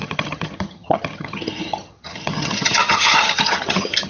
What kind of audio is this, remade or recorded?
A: remade